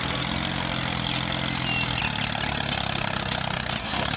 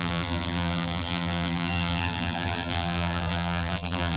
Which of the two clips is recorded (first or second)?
first